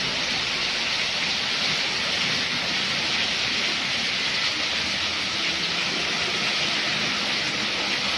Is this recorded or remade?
recorded